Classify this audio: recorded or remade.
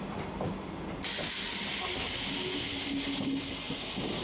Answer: recorded